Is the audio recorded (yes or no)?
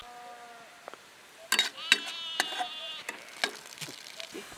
yes